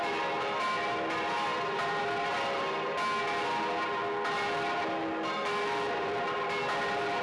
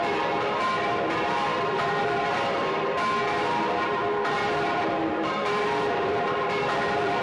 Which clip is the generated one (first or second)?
second